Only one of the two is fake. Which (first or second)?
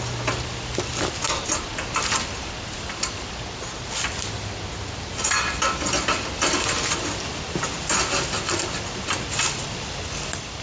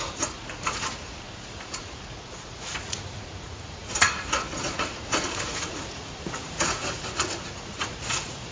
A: second